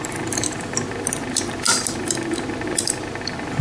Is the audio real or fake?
real